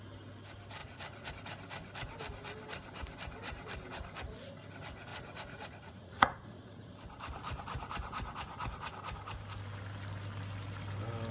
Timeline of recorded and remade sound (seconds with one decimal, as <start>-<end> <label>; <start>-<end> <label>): 0.0-0.8 recorded; 0.8-1.3 remade; 1.3-5.1 recorded; 5.1-6.9 remade; 6.9-11.3 recorded